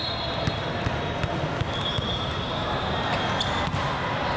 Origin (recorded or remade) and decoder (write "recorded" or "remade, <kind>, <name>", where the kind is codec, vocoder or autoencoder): recorded